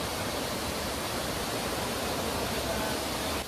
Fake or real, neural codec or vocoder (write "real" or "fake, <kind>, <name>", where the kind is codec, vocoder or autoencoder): real